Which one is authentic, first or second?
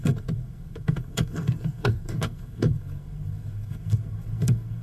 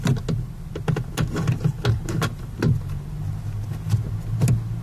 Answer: second